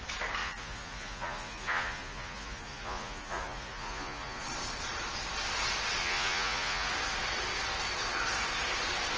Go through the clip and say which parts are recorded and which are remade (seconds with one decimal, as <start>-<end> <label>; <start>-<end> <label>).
0.0-0.4 recorded; 0.4-4.4 remade; 4.4-6.0 recorded; 6.0-6.9 remade; 6.9-9.2 recorded